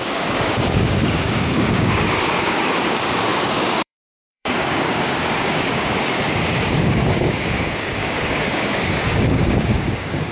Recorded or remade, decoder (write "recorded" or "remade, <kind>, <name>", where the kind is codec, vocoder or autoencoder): remade, codec, DAC